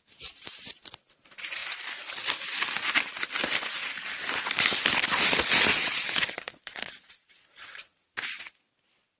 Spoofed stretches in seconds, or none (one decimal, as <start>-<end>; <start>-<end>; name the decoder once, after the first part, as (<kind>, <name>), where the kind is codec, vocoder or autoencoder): 5.7-8.6 (vocoder, Vocos)